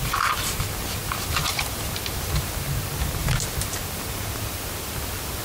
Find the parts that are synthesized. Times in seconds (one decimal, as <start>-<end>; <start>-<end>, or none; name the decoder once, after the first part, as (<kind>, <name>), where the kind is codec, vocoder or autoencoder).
3.2-5.4 (vocoder, BigVGAN v2)